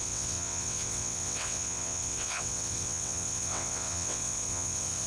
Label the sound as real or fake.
fake